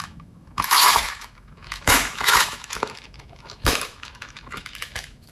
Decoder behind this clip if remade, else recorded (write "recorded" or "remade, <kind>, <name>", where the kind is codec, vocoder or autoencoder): remade, autoencoder, DAC-VAE